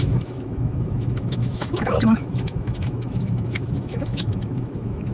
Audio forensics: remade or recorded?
remade